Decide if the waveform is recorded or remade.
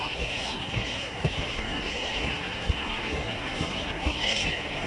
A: remade